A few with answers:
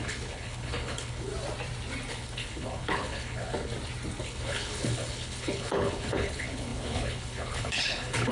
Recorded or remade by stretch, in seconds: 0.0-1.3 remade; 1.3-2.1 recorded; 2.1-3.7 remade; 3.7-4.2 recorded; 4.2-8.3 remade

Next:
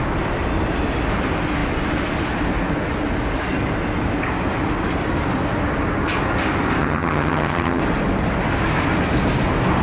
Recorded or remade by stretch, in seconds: 0.0-6.8 recorded; 6.8-7.8 remade; 7.8-9.8 recorded

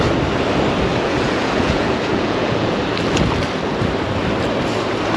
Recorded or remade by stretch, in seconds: 0.0-0.9 recorded; 0.9-2.8 remade; 2.8-5.2 recorded